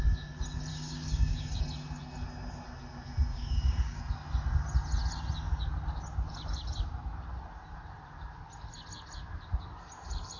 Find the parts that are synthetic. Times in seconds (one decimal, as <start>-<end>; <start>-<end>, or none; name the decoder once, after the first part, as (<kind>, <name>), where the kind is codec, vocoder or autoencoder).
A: 0.7-1.6 (codec, DAC); 3.3-4.0